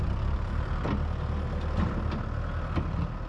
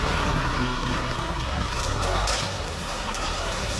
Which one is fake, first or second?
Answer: second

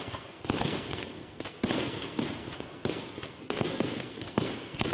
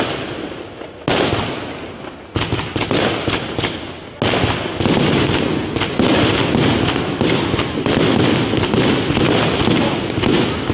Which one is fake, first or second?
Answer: first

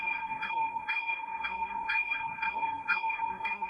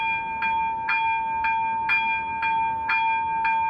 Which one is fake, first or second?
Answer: first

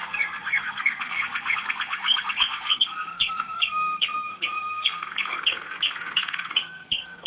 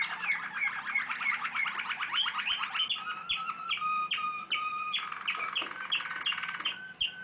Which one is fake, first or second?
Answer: first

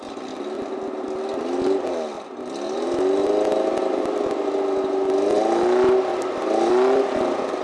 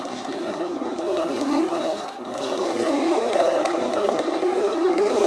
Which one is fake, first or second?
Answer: second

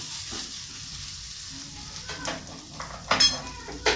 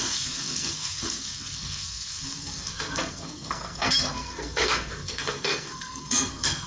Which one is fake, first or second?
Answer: second